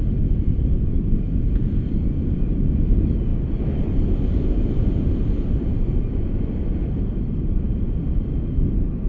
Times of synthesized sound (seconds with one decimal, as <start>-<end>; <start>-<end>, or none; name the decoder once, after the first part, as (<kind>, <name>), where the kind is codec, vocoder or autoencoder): none